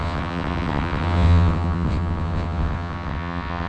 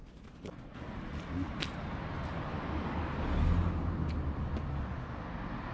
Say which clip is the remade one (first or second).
first